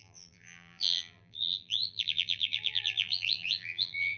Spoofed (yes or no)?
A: yes